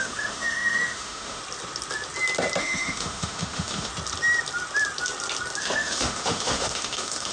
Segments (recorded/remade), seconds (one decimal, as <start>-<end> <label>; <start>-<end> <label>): 0.0-1.4 remade; 1.4-2.6 recorded; 2.6-3.9 remade; 3.9-5.6 recorded; 5.6-7.3 remade